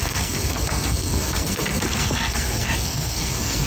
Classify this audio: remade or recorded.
remade